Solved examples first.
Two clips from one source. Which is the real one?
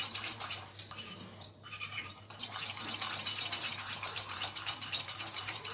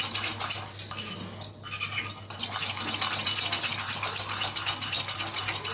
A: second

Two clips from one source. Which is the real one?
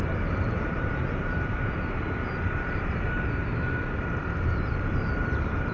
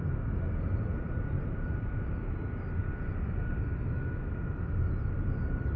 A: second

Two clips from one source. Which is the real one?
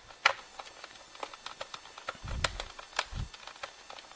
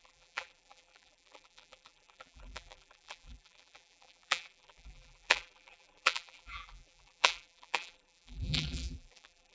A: first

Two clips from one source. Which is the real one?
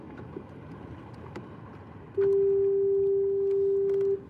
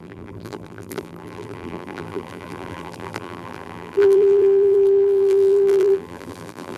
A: first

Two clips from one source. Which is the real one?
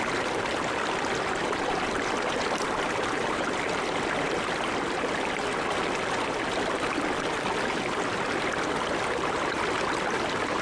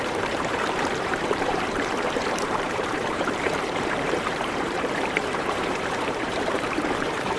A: first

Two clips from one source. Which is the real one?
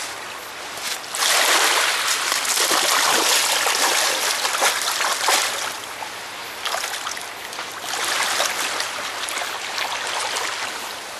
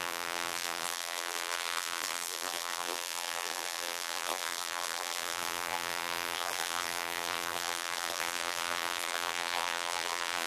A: first